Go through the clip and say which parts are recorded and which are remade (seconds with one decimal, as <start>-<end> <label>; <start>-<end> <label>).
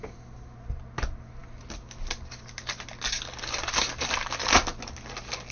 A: 0.0-5.5 recorded